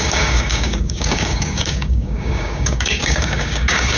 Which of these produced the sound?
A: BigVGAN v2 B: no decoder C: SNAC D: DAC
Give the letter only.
D